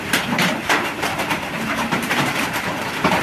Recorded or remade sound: remade